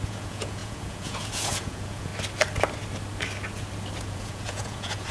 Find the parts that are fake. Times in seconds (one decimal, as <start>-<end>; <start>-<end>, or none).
0.0-2.1; 4.0-5.1